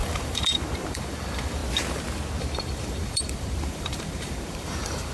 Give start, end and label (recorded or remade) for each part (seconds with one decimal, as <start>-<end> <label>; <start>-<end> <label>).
0.0-1.6 remade; 1.6-2.6 recorded; 2.6-5.1 remade

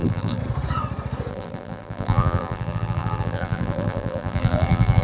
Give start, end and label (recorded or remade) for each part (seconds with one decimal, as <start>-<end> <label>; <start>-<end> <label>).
0.0-0.4 remade; 0.4-1.3 recorded; 1.3-5.0 remade

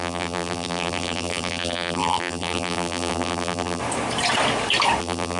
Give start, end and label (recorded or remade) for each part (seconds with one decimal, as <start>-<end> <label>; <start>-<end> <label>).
0.0-3.8 remade; 3.8-5.0 recorded; 5.0-5.4 remade